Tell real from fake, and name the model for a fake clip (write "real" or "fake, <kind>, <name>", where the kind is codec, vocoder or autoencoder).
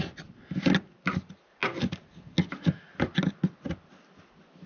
real